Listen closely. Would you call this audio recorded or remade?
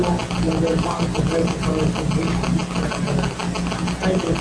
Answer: recorded